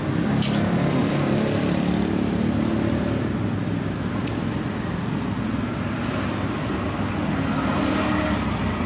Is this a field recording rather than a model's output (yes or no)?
yes